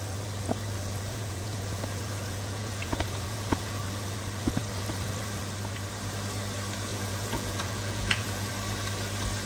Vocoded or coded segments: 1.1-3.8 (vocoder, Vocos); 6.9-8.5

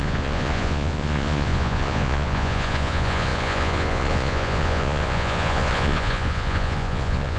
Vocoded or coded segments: 0.0-7.4 (vocoder, Vocos)

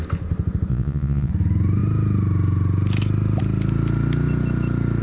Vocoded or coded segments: 0.7-1.3 (vocoder, Vocos)

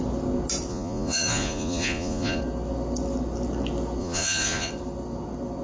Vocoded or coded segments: 0.7-2.4 (vocoder, Vocos); 4.0-4.7

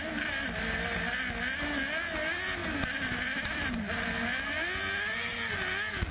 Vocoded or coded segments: none

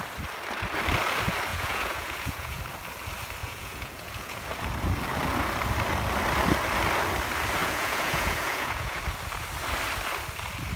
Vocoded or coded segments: 1.5-2.6 (vocoder, Vocos); 3.4-4.4; 7.6-9.0

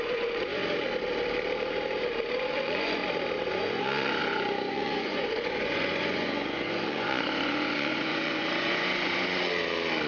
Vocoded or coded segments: 0.0-0.6 (vocoder, Vocos); 2.4-3.0; 3.5-9.4